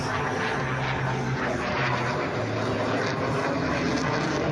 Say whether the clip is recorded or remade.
recorded